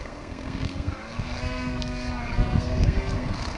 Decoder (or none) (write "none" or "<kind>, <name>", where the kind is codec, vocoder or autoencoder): codec, SNAC